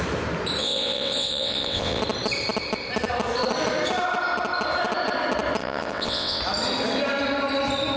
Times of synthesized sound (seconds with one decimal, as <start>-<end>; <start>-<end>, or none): 0.6-2.0; 5.6-6.4